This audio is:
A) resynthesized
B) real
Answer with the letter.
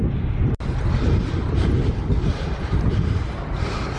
B